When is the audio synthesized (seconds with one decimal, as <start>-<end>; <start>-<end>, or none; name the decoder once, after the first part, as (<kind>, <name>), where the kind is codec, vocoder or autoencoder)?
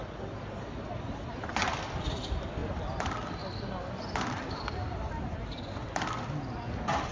0.0-2.6 (vocoder, BigVGAN v2); 4.6-7.1